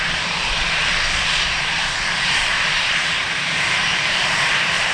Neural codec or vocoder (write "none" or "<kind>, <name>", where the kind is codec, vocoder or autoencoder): vocoder, BigVGAN v2